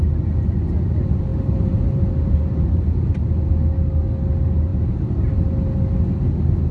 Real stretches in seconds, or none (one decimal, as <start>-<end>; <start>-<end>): 0.0-1.3; 3.1-4.7; 5.4-6.7